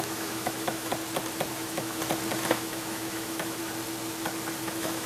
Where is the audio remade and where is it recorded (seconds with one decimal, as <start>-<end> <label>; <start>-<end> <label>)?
0.0-0.9 remade; 0.9-1.5 recorded; 1.5-2.0 remade; 2.0-2.5 recorded; 2.5-3.6 remade; 3.6-4.6 recorded; 4.6-5.1 remade